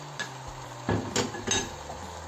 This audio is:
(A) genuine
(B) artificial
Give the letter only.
A